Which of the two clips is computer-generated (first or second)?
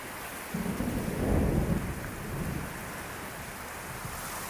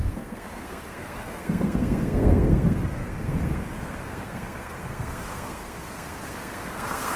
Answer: second